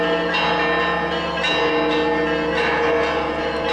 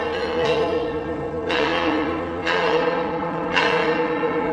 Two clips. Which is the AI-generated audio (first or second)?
second